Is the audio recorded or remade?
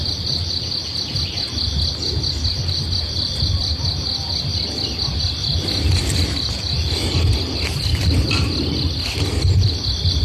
recorded